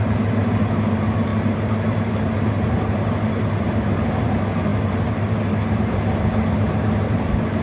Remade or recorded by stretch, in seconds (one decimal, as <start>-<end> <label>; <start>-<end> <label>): 0.0-7.6 remade